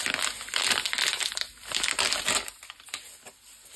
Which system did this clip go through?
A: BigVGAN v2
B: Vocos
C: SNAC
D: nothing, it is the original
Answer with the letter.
D